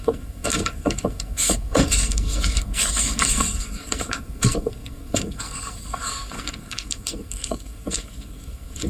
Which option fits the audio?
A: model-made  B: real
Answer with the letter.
A